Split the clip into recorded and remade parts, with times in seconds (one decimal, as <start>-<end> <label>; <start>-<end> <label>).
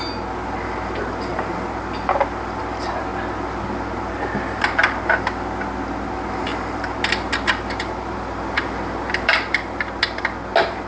0.0-10.9 recorded